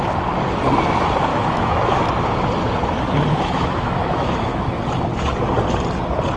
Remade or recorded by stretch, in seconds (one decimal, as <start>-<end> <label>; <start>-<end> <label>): 0.0-1.3 recorded; 1.3-2.0 remade; 2.0-3.3 recorded; 3.3-4.8 remade; 4.8-6.4 recorded